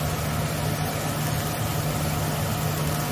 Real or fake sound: real